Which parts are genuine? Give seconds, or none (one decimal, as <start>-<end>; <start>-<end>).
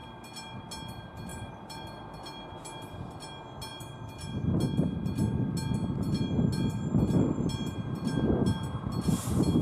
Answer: 0.0-1.3; 2.0-9.6